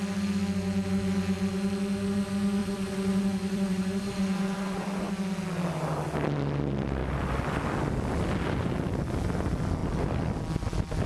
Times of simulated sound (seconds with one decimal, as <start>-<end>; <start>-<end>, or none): 2.6-5.1